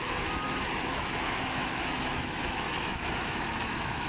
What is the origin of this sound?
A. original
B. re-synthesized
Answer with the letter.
B